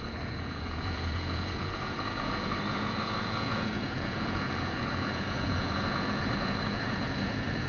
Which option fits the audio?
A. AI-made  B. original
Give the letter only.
A